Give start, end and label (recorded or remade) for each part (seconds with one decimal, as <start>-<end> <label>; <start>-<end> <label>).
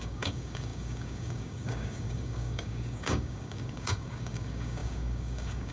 0.0-5.7 remade